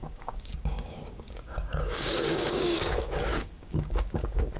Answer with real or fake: fake